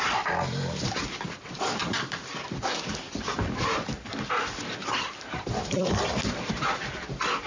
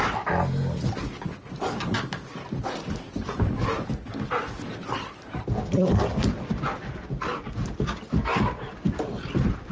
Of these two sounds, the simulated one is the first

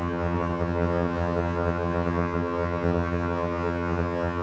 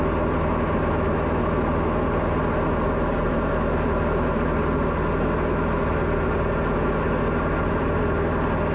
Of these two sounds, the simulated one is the first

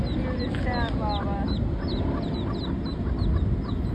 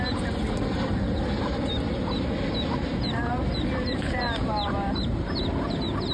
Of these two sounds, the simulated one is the second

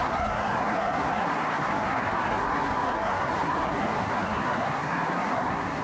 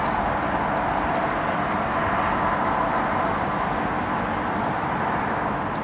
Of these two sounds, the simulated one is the first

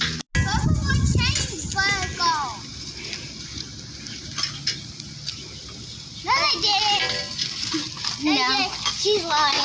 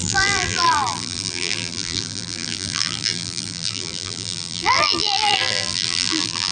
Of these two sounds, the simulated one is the second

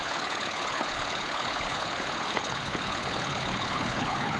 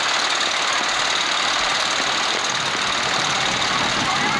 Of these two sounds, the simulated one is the first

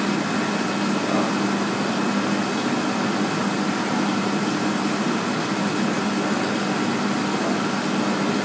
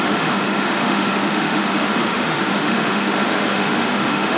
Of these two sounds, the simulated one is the second